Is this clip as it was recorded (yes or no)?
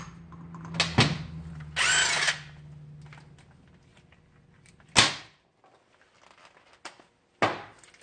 yes